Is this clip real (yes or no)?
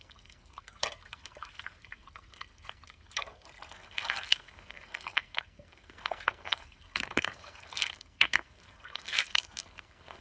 no